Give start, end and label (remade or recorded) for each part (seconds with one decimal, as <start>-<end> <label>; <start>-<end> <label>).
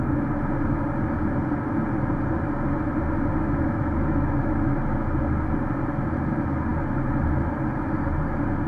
0.0-3.3 recorded; 3.3-5.2 remade; 5.2-8.7 recorded